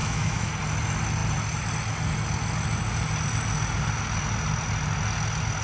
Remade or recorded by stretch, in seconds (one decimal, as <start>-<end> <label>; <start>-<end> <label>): 0.0-0.5 remade; 0.5-5.6 recorded